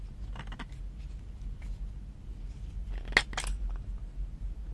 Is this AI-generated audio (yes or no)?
no